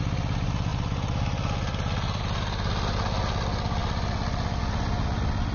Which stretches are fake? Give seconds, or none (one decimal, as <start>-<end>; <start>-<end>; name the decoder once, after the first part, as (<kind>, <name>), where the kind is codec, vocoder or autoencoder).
none